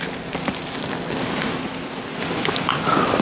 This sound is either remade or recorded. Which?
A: recorded